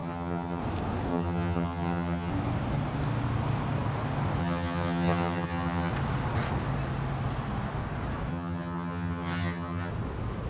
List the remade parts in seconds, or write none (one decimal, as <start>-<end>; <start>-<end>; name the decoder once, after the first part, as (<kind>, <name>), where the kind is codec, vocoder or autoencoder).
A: 0.0-0.6 (vocoder, HiFi-GAN); 1.1-2.3; 4.4-5.9; 8.3-9.9